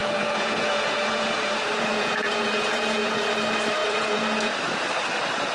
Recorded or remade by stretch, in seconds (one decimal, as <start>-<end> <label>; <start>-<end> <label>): 0.0-3.3 remade; 3.3-3.8 recorded; 3.8-4.5 remade; 4.5-5.5 recorded